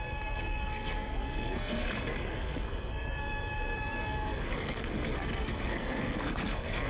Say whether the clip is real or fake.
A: fake